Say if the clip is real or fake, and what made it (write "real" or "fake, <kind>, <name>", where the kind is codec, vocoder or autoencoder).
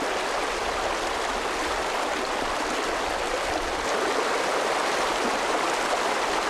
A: real